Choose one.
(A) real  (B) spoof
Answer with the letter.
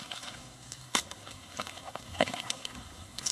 B